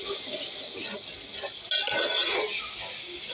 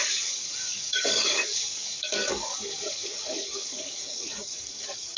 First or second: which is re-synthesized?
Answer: second